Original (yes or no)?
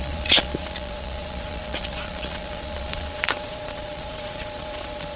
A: no